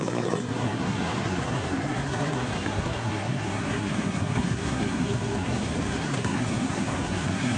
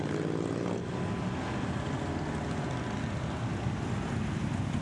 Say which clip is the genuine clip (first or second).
second